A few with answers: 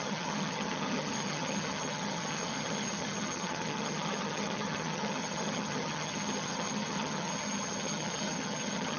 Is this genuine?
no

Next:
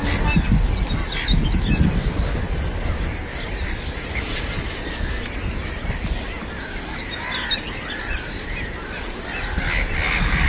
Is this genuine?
yes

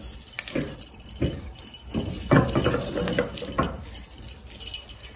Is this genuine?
yes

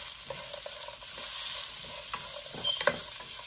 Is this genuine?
yes